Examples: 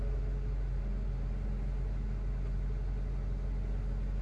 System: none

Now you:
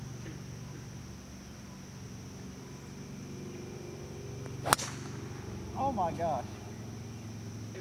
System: none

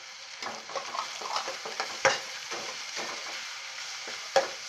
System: vocoder, BigVGAN v2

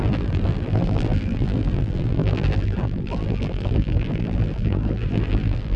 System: vocoder, BigVGAN v2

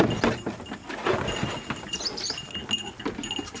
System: none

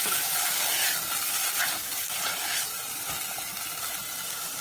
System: none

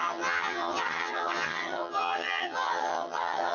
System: vocoder, HiFi-GAN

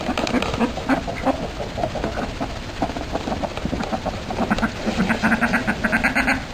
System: none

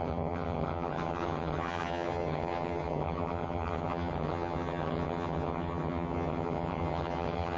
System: vocoder, HiFi-GAN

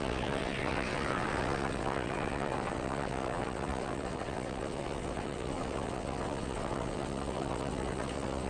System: vocoder, WaveNeXt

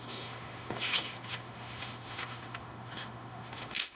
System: autoencoder, DAC-VAE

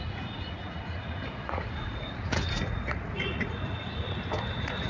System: vocoder, Vocos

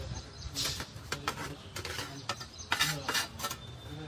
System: none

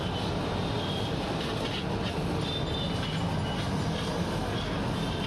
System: none